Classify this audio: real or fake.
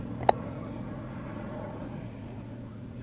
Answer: fake